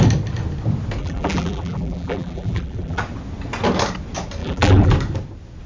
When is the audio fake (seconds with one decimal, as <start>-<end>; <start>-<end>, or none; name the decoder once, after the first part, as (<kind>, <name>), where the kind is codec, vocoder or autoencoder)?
1.0-3.0 (vocoder, BigVGAN v2); 4.4-4.9

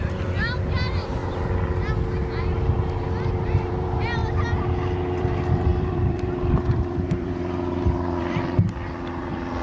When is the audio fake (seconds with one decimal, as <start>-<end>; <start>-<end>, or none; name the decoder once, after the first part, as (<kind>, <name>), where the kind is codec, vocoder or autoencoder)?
0.0-1.2 (vocoder, BigVGAN v2); 3.0-4.2; 5.2-9.6

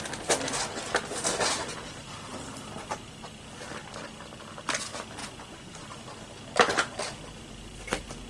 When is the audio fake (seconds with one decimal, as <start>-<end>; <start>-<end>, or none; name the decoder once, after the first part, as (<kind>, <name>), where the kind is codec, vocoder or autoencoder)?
5.2-5.8 (vocoder, Vocos)

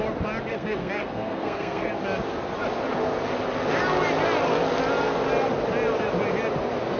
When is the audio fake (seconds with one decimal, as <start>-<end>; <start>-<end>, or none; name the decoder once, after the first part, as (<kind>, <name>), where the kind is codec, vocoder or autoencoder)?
0.5-1.9 (codec, SNAC)